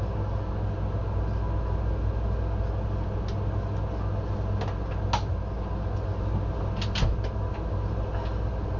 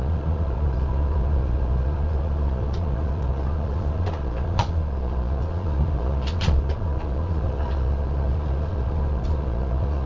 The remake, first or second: second